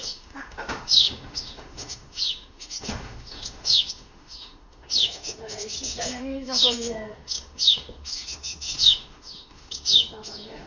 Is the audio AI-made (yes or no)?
yes